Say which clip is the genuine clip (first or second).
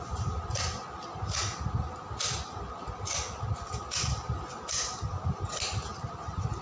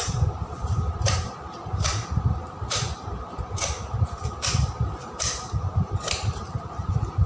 first